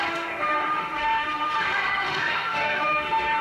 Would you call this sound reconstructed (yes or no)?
yes